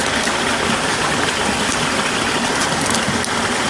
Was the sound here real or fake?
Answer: real